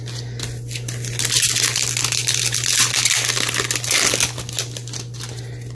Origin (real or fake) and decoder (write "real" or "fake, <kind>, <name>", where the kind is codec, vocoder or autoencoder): real